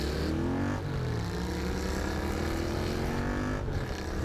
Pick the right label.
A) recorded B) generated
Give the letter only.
A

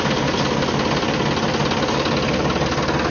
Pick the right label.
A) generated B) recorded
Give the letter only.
B